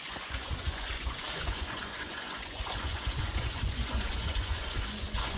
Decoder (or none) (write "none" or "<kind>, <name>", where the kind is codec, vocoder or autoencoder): vocoder, Vocos